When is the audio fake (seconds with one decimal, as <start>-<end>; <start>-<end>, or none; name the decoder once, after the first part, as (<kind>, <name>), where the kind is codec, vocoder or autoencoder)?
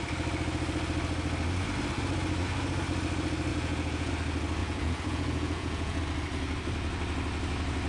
3.5-4.1 (vocoder, Vocos); 4.6-6.0